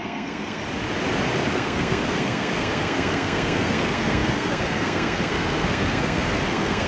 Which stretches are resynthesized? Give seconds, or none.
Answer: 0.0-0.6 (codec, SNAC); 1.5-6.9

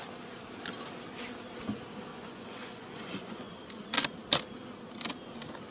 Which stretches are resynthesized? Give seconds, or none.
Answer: 2.1-3.7 (vocoder, Vocos)

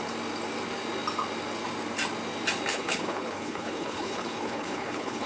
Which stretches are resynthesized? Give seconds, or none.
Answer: 2.7-5.3 (codec, HILCodec)

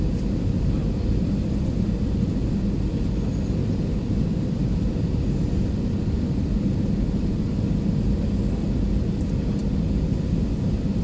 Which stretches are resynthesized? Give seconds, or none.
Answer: none